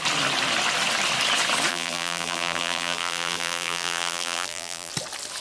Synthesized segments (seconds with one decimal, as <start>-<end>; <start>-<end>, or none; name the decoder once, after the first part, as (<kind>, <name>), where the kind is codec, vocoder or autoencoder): 1.7-4.9 (vocoder, BigVGAN v2)